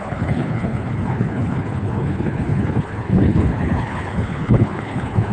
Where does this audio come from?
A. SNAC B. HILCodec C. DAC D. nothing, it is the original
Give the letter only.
B